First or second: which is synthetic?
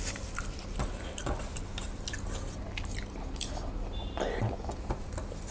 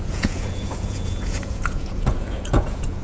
second